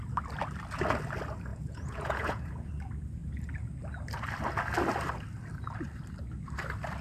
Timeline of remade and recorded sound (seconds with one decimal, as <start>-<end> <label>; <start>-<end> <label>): 0.0-1.5 recorded; 1.5-2.7 remade; 2.7-7.0 recorded